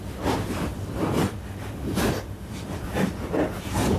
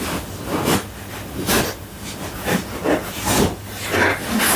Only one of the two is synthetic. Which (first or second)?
first